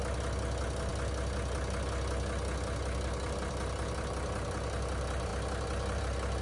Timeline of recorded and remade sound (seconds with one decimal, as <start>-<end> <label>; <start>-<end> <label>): 0.0-6.4 recorded